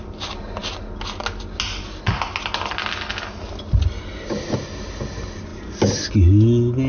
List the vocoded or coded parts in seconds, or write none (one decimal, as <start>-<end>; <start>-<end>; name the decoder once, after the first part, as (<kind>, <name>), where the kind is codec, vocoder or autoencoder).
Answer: none